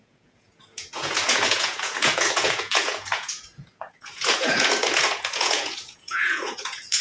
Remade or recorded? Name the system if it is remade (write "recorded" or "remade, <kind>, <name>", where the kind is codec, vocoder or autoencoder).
remade, vocoder, Vocos